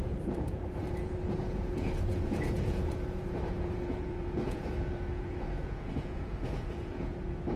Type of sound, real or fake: fake